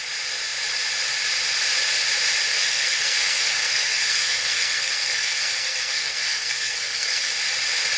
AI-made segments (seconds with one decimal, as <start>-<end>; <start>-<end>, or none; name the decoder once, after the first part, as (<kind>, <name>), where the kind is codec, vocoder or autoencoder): 2.5-7.3 (codec, SNAC)